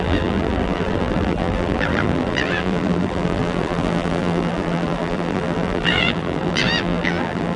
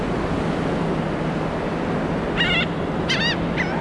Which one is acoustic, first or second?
second